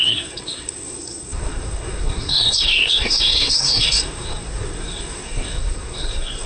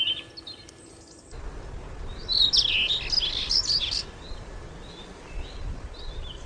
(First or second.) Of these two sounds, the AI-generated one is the first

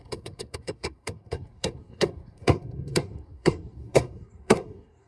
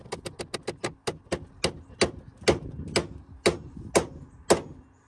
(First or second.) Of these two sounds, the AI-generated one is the first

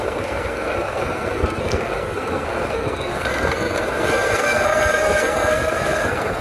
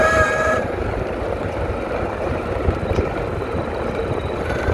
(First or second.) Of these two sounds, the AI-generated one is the first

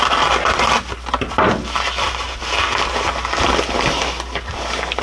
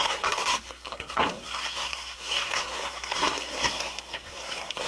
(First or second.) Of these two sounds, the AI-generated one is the second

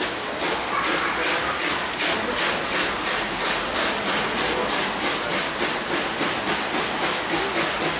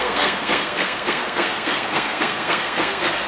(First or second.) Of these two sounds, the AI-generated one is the second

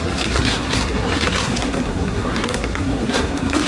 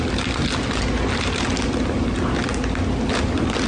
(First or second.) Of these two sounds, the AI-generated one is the first